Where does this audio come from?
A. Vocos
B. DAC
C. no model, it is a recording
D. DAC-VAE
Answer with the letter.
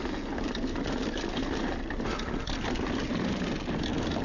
C